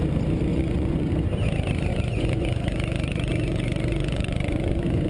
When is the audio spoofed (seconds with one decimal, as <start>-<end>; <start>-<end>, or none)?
0.5-1.1; 1.9-5.1